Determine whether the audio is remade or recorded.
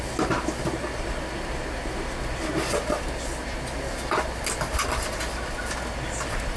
recorded